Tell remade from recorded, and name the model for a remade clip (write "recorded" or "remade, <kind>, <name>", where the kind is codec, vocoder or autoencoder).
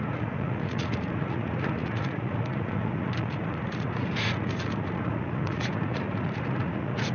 remade, vocoder, Vocos